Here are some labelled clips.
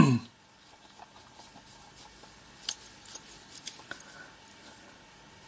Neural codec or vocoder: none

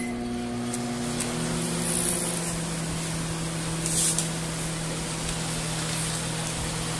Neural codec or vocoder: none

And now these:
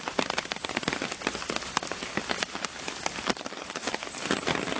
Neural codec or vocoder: none